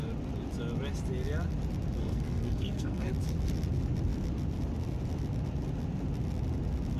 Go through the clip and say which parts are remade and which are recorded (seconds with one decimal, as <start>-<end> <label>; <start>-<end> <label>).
0.0-2.0 recorded; 2.0-3.1 remade; 3.1-7.0 recorded